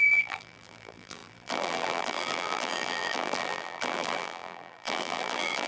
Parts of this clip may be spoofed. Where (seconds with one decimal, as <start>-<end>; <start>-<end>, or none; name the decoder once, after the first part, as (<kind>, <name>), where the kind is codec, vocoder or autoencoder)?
0.0-5.7 (vocoder, BigVGAN v2)